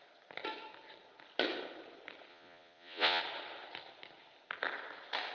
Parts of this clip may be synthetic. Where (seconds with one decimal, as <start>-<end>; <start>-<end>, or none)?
2.3-3.2